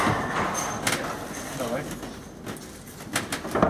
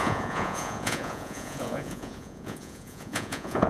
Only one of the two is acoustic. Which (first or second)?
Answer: first